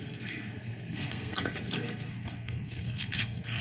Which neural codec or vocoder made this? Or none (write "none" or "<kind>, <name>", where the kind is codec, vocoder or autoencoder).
codec, SNAC